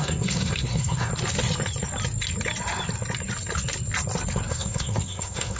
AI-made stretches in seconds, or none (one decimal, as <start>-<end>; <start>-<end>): 0.0-1.1; 4.5-5.6